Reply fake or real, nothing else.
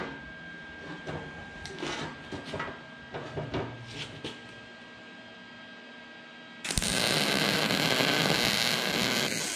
real